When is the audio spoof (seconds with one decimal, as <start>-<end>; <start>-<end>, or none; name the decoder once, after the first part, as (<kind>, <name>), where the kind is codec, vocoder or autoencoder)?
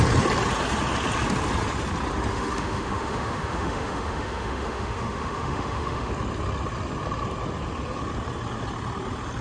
2.3-6.1 (autoencoder, DAC-VAE)